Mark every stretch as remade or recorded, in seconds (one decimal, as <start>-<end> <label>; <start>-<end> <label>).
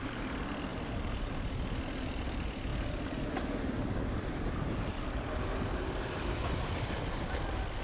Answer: 0.0-0.7 recorded; 0.7-1.8 remade; 1.8-2.7 recorded; 2.7-6.9 remade; 6.9-7.8 recorded